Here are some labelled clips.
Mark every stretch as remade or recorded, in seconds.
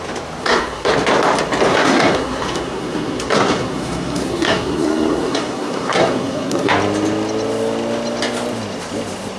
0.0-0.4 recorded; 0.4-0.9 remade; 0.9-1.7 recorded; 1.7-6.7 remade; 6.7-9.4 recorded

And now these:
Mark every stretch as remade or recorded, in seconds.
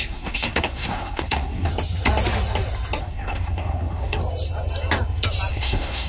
0.0-1.7 remade; 1.7-3.0 recorded; 3.0-4.2 remade; 4.2-5.5 recorded; 5.5-6.1 remade